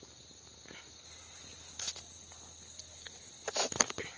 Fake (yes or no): no